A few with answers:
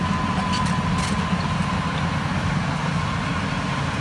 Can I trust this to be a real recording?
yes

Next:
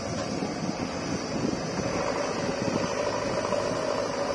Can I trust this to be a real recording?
yes